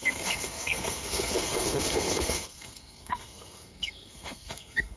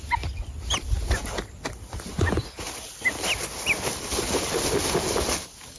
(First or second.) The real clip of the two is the second